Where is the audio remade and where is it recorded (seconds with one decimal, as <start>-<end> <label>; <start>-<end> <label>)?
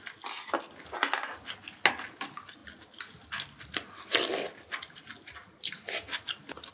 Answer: 0.0-6.7 recorded